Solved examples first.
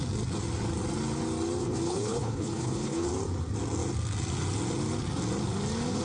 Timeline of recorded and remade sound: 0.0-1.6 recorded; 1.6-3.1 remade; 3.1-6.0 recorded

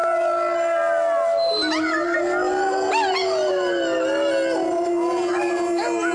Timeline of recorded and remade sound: 0.0-6.1 recorded

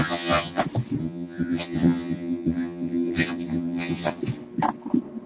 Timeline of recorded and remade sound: 0.0-0.6 remade; 0.6-1.0 recorded; 1.0-4.2 remade; 4.2-5.3 recorded

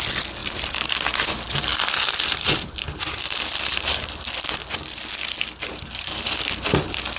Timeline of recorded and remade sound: 0.0-0.4 recorded; 0.4-1.1 remade; 1.1-7.2 recorded

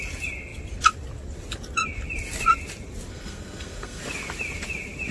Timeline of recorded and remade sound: 0.0-3.1 recorded; 3.1-4.0 remade; 4.0-5.1 recorded

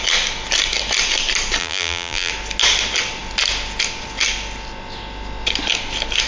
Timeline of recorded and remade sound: 0.0-1.6 recorded; 1.6-2.3 remade; 2.3-6.3 recorded